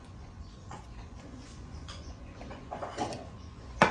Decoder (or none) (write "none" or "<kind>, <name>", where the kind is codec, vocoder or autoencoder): vocoder, Vocos